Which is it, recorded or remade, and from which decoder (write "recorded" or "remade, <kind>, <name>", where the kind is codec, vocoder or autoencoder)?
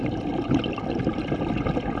recorded